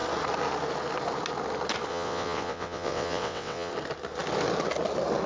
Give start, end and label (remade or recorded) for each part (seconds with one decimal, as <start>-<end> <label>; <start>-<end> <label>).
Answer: 0.0-1.9 recorded; 1.9-3.7 remade; 3.7-5.3 recorded